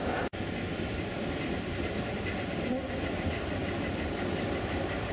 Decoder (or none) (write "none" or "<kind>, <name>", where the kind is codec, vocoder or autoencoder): vocoder, BigVGAN v2